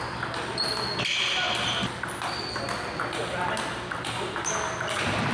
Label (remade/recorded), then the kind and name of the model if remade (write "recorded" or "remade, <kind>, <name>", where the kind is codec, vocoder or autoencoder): recorded